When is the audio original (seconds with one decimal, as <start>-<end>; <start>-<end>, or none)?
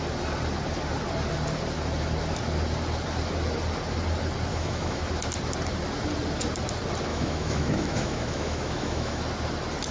0.0-4.5; 5.0-7.1; 9.2-9.9